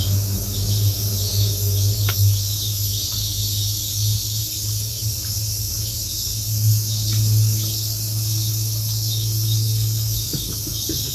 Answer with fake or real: fake